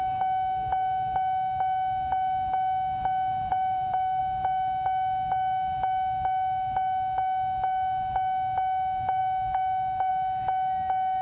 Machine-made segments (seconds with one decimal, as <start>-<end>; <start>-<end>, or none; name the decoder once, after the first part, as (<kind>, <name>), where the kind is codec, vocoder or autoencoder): 3.5-4.2 (vocoder, BigVGAN v2)